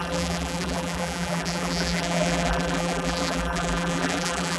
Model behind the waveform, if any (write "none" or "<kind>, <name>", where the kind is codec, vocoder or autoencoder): vocoder, BigVGAN v2